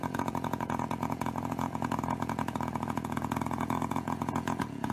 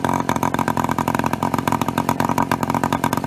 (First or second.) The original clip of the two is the second